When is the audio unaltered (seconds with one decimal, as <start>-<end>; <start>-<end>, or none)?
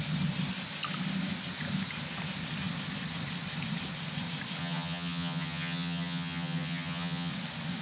0.0-4.6; 7.3-7.8